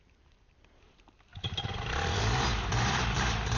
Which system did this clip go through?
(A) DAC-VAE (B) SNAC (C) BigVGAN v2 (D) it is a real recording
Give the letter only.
C